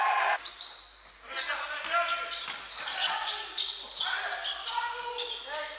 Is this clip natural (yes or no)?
yes